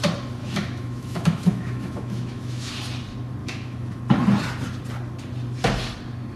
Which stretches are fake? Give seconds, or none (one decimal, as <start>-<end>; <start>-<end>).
0.4-2.7; 3.4-4.0

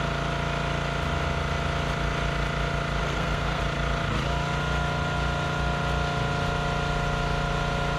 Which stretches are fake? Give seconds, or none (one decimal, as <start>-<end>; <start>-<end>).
3.0-3.6

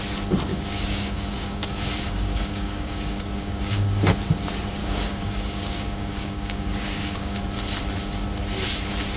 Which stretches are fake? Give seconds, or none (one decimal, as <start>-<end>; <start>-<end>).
0.5-3.8; 4.8-7.4

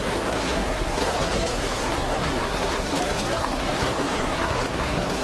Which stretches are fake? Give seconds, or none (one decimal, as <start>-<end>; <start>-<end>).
0.0-5.2